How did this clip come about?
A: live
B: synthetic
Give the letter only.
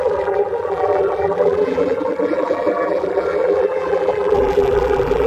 B